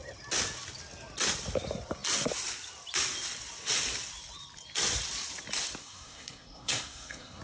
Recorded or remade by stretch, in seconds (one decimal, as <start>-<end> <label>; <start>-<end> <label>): 0.0-5.8 recorded; 5.8-7.4 remade